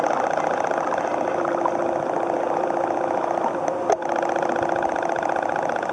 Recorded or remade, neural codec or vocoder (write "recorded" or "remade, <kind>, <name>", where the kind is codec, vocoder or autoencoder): recorded